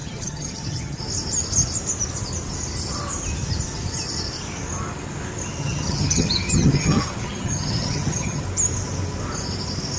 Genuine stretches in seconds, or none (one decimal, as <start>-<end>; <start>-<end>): 1.0-5.6; 8.4-10.0